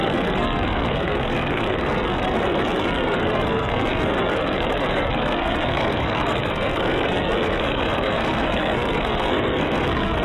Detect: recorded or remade remade